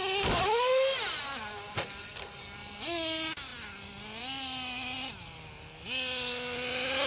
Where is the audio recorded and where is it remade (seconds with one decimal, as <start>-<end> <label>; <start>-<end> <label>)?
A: 0.0-7.1 recorded